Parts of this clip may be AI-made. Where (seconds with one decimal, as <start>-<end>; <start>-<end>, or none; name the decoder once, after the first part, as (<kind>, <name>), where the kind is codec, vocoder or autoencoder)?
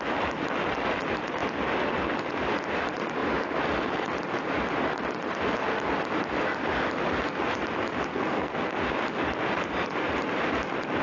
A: 8.1-8.7 (codec, SNAC)